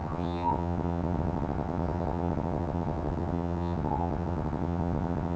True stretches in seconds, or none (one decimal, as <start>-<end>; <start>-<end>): none